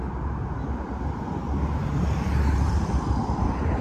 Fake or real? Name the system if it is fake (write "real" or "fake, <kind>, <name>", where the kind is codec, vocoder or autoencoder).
real